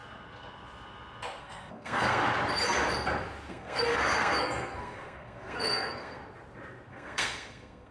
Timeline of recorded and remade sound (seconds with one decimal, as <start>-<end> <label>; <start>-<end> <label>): 0.0-1.4 recorded; 1.4-2.2 remade; 2.2-3.5 recorded; 3.5-6.2 remade; 6.2-6.9 recorded; 6.9-7.9 remade